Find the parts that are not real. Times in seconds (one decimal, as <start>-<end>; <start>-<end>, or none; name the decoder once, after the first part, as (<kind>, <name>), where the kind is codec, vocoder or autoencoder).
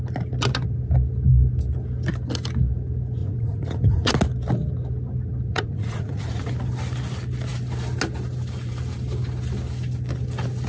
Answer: 3.2-4.1 (vocoder, Vocos); 5.5-6.5